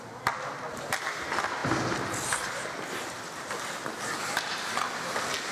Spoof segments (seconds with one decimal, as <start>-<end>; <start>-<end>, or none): none